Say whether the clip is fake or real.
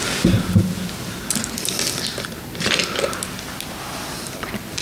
real